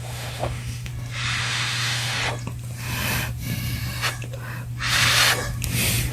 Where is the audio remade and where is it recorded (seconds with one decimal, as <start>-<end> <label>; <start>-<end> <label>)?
0.0-0.9 remade; 0.9-1.4 recorded; 1.4-2.2 remade; 2.2-6.1 recorded